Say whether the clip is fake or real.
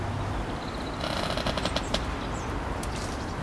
real